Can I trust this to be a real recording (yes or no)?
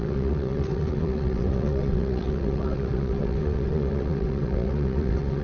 no